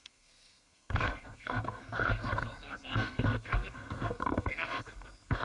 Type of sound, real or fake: fake